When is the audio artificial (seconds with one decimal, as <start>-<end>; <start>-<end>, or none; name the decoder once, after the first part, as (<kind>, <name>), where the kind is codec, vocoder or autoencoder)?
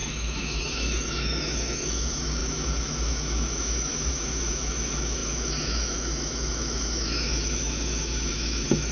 0.0-8.9 (autoencoder, DAC-VAE)